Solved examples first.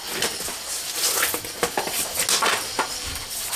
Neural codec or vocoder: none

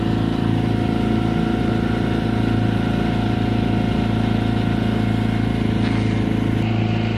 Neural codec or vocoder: none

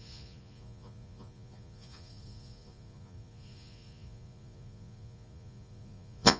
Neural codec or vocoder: vocoder, Vocos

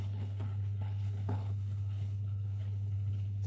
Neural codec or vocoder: codec, HILCodec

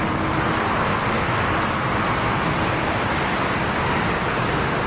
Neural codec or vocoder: none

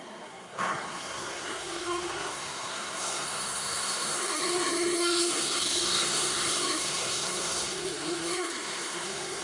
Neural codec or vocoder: codec, SNAC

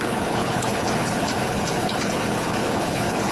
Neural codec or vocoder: codec, HILCodec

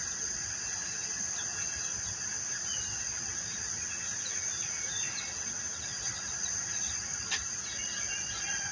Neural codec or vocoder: none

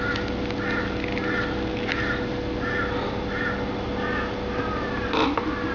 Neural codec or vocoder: none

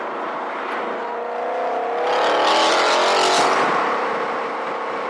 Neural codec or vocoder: none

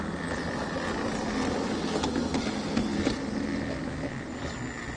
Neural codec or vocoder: none